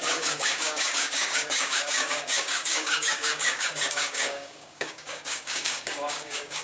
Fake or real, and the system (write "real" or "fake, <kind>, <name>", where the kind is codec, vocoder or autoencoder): fake, codec, DAC